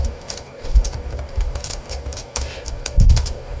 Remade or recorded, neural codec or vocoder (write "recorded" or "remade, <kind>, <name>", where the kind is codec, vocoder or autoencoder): remade, codec, DAC